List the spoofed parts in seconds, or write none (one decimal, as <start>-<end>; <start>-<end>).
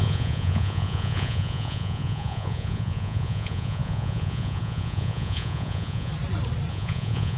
0.0-6.1; 6.7-7.4